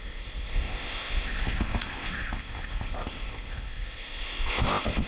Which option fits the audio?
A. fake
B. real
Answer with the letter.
A